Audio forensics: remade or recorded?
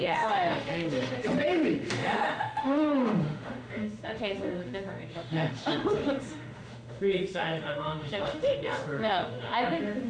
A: remade